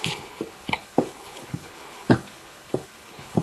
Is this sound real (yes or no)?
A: no